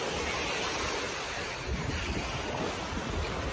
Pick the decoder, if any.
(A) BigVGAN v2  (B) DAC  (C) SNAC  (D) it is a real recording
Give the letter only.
D